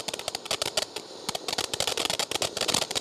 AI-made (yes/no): no